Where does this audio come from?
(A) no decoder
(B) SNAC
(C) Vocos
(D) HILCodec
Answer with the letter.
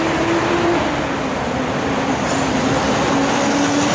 A